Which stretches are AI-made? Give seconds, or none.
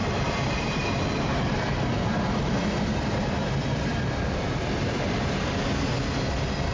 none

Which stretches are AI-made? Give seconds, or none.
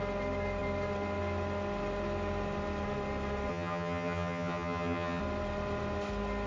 3.5-5.2 (vocoder, HiFi-GAN)